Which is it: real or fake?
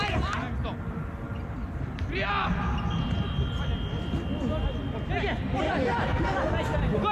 real